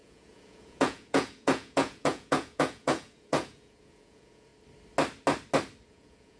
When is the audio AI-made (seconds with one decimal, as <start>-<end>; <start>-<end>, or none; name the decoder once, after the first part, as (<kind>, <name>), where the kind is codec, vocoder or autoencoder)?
0.0-4.5 (vocoder, Vocos); 5.9-6.4